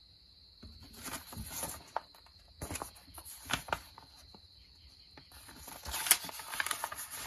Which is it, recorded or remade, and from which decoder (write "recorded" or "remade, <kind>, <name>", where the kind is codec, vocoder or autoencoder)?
recorded